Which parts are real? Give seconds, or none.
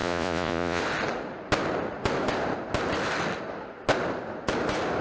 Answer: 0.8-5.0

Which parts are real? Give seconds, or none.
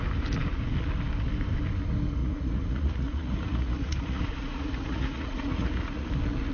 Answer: 0.0-2.2; 6.1-6.5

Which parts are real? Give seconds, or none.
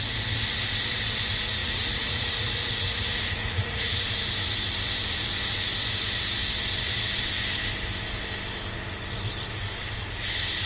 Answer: 0.0-1.6; 4.0-10.7